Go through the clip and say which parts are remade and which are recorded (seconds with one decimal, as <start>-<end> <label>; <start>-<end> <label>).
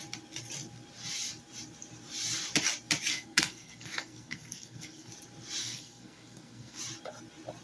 0.0-3.1 recorded; 3.1-5.1 remade; 5.1-5.6 recorded; 5.6-6.8 remade; 6.8-7.6 recorded